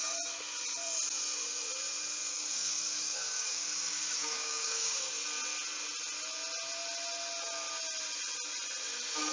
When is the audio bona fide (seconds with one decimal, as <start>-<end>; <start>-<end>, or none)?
0.0-2.3; 5.1-9.3